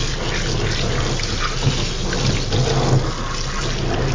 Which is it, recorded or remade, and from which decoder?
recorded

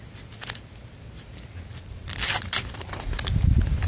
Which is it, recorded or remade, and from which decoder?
recorded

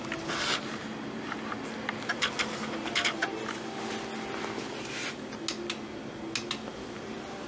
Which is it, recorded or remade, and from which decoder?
recorded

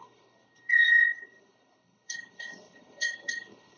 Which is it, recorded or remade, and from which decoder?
remade, codec, HILCodec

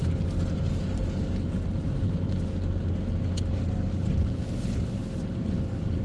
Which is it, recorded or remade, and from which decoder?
recorded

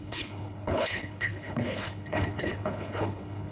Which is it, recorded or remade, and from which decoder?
remade, codec, HILCodec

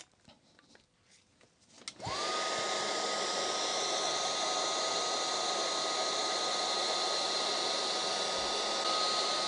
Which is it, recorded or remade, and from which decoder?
recorded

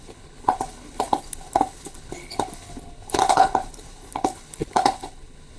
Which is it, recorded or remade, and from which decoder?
remade, codec, HILCodec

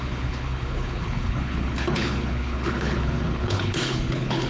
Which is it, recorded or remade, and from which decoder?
remade, codec, HILCodec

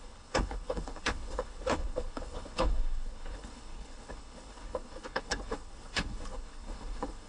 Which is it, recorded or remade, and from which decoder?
remade, codec, HILCodec